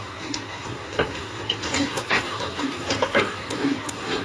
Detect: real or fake fake